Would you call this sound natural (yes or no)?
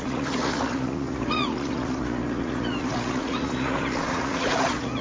no